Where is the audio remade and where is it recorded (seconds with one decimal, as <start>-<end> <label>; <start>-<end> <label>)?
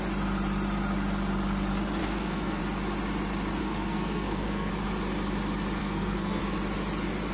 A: 0.0-2.0 recorded; 2.0-2.6 remade; 2.6-3.6 recorded; 3.6-4.7 remade; 4.7-5.8 recorded; 5.8-6.4 remade; 6.4-7.3 recorded